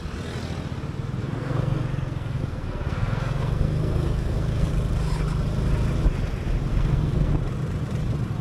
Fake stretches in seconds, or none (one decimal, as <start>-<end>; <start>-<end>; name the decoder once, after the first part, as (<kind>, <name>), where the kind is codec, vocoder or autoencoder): 1.2-4.7 (codec, SNAC); 6.7-7.3